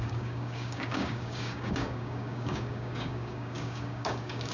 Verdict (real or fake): fake